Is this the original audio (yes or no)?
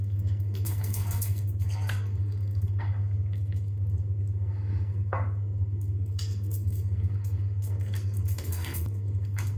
no